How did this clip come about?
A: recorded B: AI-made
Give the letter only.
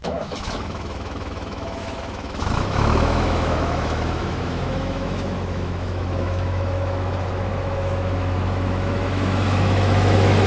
B